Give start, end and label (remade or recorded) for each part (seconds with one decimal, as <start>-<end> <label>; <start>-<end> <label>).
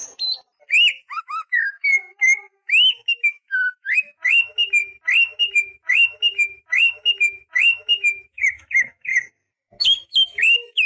0.0-1.2 recorded; 1.2-4.8 remade; 4.8-5.4 recorded; 5.4-9.1 remade; 9.1-9.8 recorded; 9.8-10.9 remade